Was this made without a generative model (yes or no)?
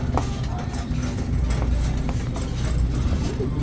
yes